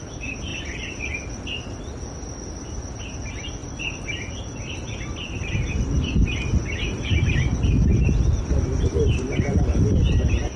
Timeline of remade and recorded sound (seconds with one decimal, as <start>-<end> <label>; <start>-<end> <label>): 0.0-0.5 recorded; 0.5-1.0 remade; 1.0-7.9 recorded; 7.9-8.4 remade; 8.4-10.6 recorded

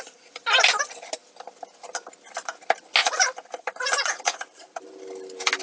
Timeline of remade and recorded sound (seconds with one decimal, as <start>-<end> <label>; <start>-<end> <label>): 0.0-3.0 recorded; 3.0-4.8 remade; 4.8-5.6 recorded

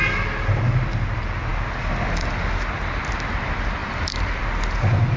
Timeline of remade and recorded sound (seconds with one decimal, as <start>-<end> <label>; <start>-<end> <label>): 0.0-3.8 recorded; 3.8-4.4 remade; 4.4-5.2 recorded